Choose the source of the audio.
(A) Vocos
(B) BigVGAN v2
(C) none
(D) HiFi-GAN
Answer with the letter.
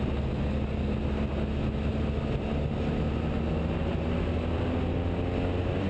C